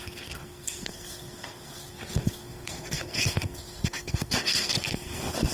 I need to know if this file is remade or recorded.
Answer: remade